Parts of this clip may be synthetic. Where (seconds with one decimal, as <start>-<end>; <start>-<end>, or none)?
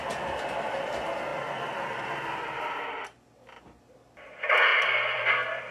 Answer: 4.7-5.7